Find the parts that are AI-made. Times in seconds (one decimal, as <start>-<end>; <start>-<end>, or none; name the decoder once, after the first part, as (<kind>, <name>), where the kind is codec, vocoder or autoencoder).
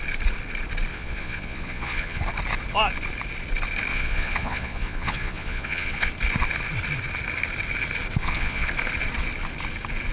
0.9-2.2 (vocoder, Vocos); 3.9-6.1; 8.2-8.7